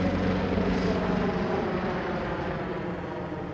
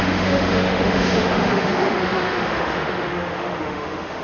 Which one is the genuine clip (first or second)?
first